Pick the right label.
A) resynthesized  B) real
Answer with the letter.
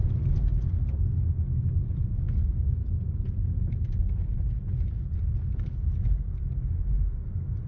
B